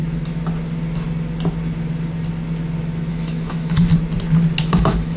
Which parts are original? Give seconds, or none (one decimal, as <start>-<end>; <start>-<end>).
0.0-3.1; 3.9-4.6